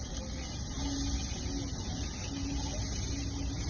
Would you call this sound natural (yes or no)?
yes